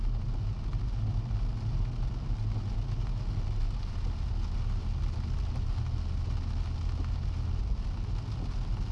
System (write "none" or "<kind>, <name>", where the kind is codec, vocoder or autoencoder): none